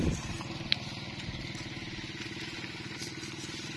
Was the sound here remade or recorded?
recorded